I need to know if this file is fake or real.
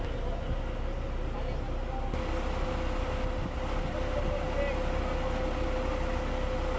real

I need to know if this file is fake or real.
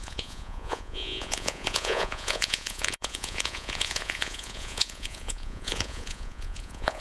fake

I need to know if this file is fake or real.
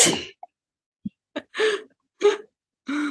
real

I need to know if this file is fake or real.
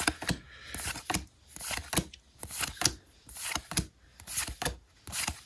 real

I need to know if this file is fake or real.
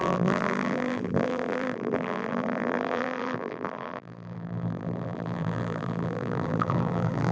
fake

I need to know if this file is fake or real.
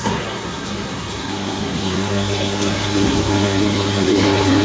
fake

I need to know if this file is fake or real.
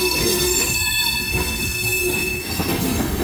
fake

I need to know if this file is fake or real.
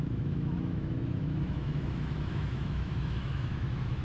fake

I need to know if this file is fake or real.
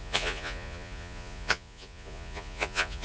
fake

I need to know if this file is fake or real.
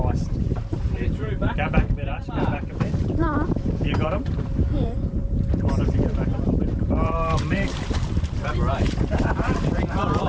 fake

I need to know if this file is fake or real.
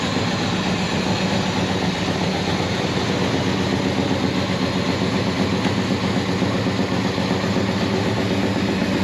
real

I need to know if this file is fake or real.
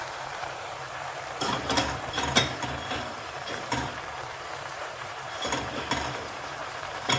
fake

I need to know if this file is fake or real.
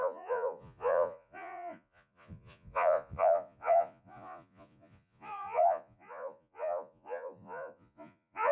fake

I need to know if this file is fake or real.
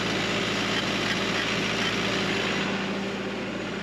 real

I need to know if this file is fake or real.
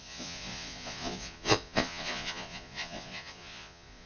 fake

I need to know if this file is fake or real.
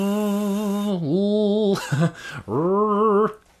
real